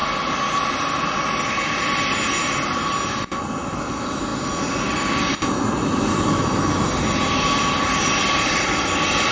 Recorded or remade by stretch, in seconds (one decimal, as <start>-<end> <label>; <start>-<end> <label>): 0.0-9.3 recorded